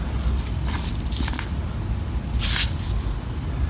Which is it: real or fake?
real